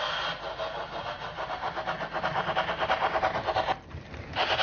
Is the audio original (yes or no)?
yes